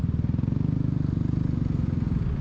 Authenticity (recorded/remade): recorded